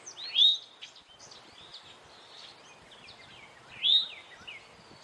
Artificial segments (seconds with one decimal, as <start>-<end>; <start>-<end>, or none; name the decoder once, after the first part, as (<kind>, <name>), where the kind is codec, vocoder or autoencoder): none